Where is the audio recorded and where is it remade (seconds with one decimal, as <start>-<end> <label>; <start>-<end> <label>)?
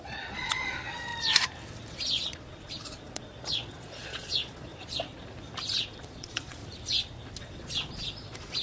0.0-1.1 remade; 1.1-1.9 recorded; 1.9-5.1 remade; 5.1-5.8 recorded; 5.8-6.6 remade; 6.6-7.4 recorded; 7.4-8.6 remade